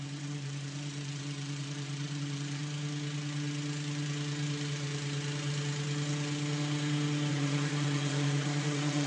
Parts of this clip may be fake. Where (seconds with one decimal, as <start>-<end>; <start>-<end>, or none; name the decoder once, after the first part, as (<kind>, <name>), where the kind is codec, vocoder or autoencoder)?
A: 0.0-2.6 (vocoder, Vocos); 7.3-9.1